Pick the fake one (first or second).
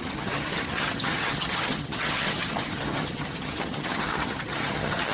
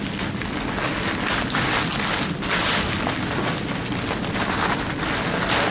first